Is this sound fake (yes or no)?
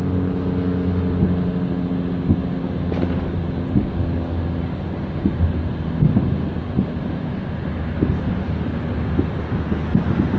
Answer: no